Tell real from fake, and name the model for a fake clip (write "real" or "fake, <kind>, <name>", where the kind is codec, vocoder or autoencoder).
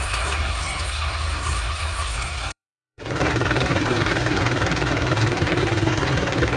fake, codec, SNAC